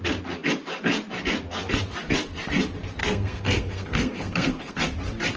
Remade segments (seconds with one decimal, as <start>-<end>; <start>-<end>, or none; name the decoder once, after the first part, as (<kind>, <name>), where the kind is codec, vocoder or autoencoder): 3.0-4.8 (codec, SNAC)